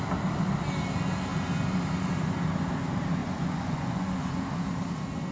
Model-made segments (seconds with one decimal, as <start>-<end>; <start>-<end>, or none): 3.2-4.4